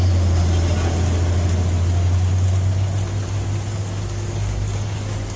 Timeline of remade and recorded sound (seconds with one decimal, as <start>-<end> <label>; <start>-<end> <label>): 0.0-3.7 recorded; 3.7-5.4 remade